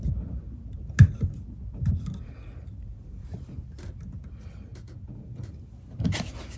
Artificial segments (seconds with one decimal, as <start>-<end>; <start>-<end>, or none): 4.7-5.5